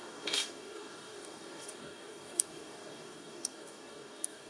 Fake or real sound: fake